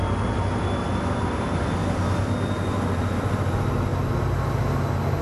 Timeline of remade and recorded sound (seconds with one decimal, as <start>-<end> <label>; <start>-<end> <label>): 0.0-5.2 recorded